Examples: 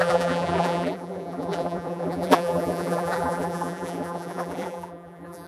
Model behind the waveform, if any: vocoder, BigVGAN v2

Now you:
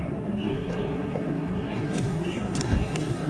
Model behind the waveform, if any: codec, SNAC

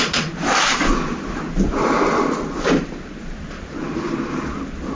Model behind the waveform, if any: vocoder, BigVGAN v2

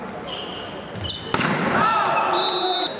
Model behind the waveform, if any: none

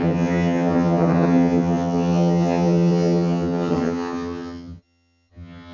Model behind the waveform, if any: vocoder, HiFi-GAN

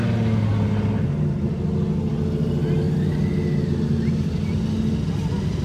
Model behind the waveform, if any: none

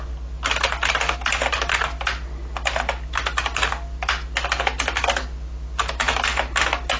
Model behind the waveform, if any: none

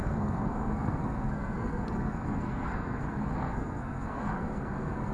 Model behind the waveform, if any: codec, SNAC